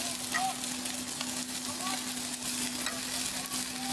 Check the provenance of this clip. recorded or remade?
recorded